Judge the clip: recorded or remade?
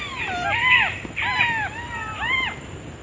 recorded